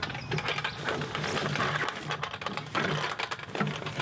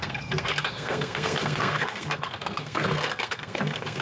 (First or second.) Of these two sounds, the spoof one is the second